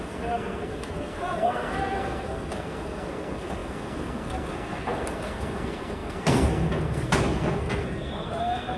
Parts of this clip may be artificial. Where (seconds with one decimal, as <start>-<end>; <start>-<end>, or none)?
0.0-8.8